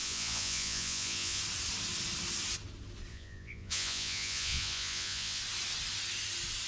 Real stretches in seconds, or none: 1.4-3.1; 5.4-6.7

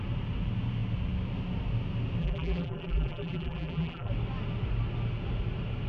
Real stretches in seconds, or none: 0.0-2.2; 4.1-5.9

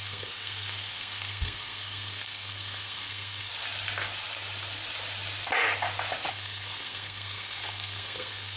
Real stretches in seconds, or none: 3.5-6.3

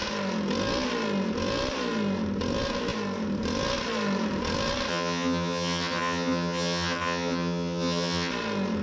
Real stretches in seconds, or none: 0.0-4.9; 8.3-8.8

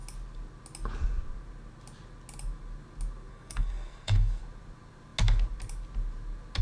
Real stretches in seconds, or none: 0.0-3.3; 4.4-6.6

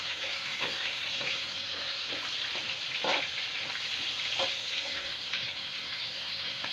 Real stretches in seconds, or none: 2.1-4.5

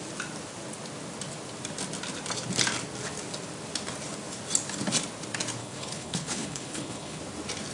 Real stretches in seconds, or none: 0.0-5.6; 7.2-7.7

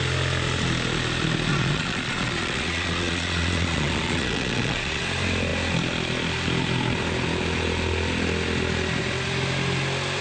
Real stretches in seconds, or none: 0.0-1.5; 5.0-10.2